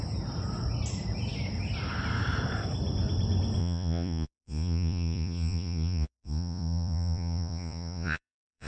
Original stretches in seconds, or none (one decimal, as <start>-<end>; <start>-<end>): 0.0-3.6